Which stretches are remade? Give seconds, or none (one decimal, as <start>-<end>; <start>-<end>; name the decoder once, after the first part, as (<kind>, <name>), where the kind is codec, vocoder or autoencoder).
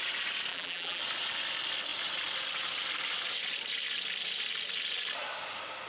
0.5-1.0 (vocoder, BigVGAN v2)